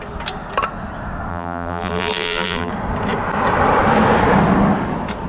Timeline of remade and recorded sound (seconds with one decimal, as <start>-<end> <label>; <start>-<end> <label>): 0.0-1.3 recorded; 1.3-2.7 remade; 2.7-5.3 recorded